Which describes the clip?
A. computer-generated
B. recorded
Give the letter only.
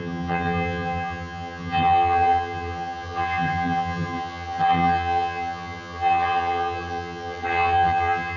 A